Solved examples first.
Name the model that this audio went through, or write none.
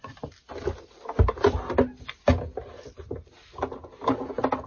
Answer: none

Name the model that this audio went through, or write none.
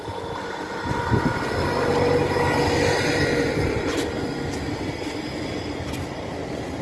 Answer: none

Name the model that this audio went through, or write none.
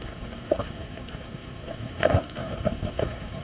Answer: codec, SNAC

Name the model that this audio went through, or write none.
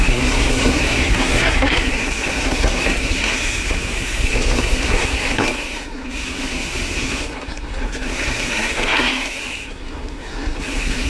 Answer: codec, SNAC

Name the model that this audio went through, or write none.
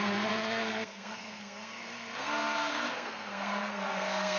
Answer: codec, SNAC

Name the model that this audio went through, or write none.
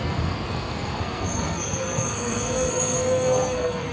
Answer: codec, SNAC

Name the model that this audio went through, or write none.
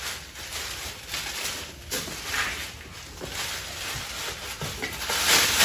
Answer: none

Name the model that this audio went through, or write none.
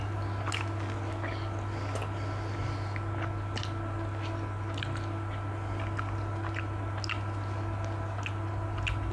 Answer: none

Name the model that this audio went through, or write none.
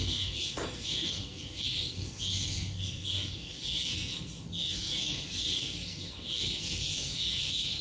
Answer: codec, SNAC